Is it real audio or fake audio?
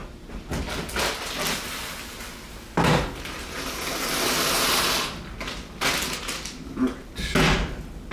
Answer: real